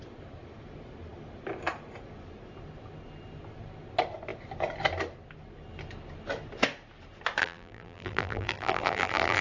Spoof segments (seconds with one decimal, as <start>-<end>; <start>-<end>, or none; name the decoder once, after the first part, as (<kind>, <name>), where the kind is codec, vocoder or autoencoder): 7.4-9.4 (vocoder, BigVGAN v2)